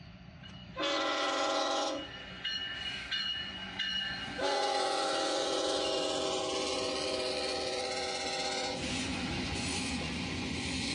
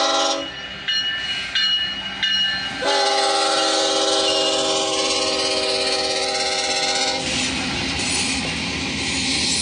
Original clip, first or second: second